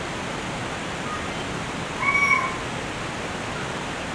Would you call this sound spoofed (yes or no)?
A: no